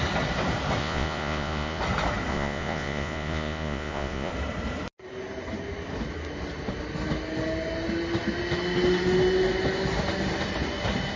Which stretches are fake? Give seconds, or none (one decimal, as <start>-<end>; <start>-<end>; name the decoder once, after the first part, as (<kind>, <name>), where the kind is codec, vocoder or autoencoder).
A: 0.8-1.8 (vocoder, Vocos); 2.3-4.3